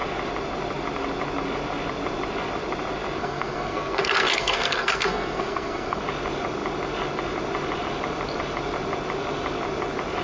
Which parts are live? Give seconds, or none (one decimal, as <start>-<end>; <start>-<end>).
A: 0.0-3.2; 6.0-10.2

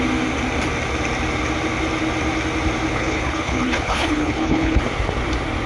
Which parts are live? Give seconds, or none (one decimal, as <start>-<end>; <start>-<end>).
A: 0.0-2.9; 4.8-5.7

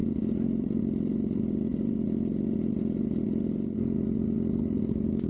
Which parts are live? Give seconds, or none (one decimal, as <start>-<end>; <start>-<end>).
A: 0.0-5.3